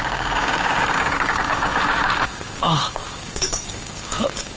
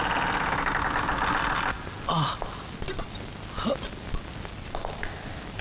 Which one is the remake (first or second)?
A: first